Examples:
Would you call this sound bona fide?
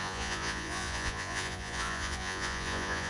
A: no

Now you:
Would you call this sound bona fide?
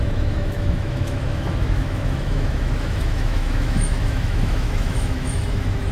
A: no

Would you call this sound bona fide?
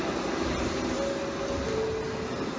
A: yes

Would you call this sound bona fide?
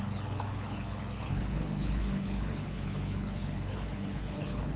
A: no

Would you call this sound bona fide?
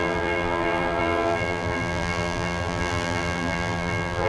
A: no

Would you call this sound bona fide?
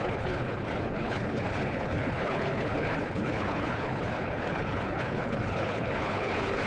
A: no